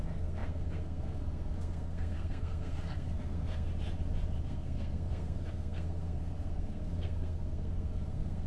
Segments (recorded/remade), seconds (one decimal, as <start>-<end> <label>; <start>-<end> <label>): 0.0-3.7 remade; 3.7-4.4 recorded; 4.4-8.5 remade